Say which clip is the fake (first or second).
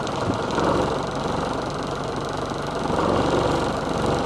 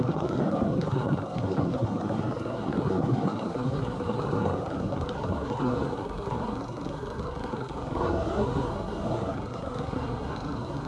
second